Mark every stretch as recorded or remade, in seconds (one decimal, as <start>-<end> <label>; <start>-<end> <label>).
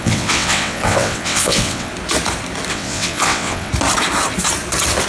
0.0-1.9 remade; 1.9-2.7 recorded; 2.7-3.7 remade; 3.7-5.1 recorded